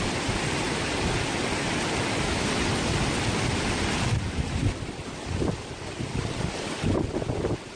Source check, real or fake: real